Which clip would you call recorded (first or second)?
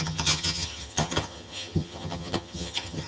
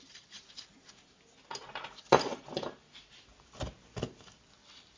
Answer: second